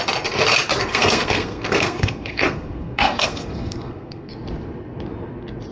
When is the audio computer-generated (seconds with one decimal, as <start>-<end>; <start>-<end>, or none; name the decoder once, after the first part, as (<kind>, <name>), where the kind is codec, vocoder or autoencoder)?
0.9-4.3 (codec, SNAC)